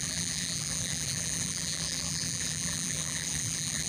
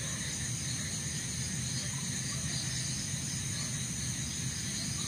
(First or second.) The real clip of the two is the second